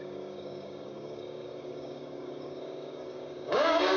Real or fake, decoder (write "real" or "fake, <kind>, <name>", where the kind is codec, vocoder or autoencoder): fake, codec, DAC